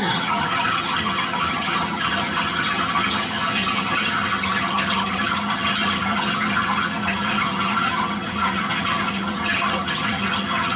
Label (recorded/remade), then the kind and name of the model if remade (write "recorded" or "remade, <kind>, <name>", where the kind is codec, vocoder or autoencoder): remade, vocoder, HiFi-GAN